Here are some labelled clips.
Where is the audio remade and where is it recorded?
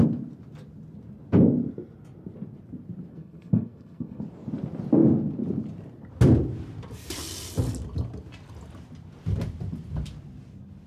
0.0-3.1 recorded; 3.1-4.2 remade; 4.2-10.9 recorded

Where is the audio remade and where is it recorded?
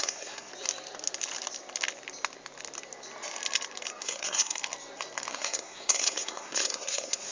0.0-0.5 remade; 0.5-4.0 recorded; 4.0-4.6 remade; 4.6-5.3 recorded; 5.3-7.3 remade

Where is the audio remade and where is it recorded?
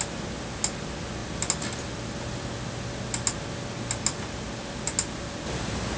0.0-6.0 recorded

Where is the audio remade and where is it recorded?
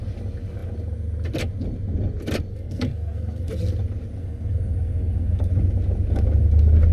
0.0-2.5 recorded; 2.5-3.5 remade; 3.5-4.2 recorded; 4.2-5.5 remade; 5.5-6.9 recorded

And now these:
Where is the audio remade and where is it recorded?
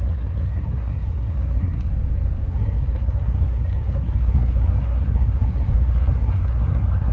0.0-1.9 remade; 1.9-2.5 recorded; 2.5-7.1 remade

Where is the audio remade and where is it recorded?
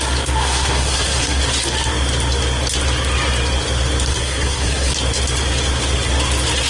0.0-0.4 recorded; 0.4-1.4 remade; 1.4-4.1 recorded; 4.1-4.9 remade; 4.9-6.7 recorded